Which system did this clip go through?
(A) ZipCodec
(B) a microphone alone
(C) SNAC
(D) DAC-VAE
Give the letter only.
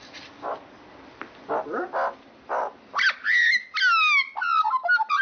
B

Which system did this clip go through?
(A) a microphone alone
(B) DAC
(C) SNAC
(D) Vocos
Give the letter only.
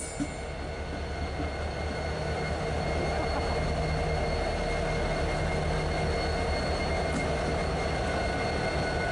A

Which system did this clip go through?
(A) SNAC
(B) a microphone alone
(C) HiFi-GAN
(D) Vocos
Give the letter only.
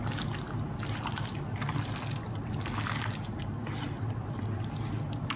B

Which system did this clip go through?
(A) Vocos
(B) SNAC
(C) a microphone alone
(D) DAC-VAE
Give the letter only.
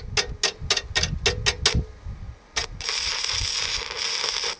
C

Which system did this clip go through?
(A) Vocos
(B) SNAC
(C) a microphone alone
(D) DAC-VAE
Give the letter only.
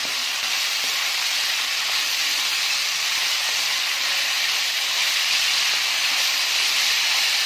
C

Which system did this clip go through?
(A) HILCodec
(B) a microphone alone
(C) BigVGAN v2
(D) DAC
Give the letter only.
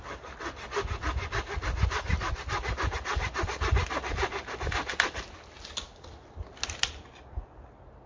B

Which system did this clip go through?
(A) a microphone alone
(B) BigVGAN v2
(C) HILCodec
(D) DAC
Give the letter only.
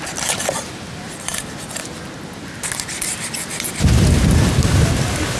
A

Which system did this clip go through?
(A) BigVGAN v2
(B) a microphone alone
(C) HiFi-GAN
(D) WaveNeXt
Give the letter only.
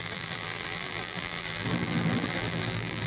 A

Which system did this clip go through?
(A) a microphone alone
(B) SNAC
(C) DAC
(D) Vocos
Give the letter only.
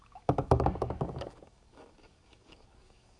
C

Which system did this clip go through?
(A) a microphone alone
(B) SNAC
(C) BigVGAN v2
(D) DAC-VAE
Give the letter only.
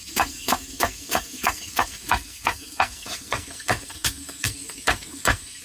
B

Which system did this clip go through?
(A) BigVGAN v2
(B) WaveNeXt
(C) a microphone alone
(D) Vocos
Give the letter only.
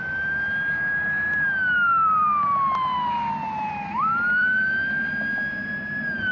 A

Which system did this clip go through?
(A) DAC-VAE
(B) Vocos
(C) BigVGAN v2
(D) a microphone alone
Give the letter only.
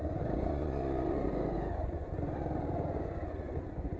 B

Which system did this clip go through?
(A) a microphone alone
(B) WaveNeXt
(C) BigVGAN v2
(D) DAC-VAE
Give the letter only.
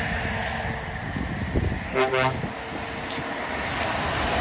A